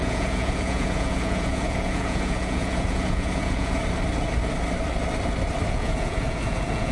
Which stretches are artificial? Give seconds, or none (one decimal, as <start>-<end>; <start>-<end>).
0.0-3.8; 5.7-6.9